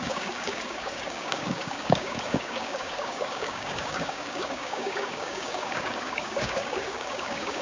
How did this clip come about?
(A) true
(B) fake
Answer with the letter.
B